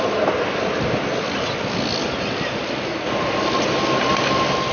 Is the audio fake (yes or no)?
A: no